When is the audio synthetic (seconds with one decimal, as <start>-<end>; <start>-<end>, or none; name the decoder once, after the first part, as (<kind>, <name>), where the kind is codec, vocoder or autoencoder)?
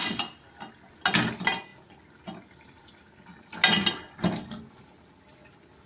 none